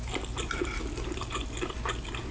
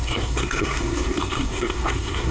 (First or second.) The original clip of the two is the first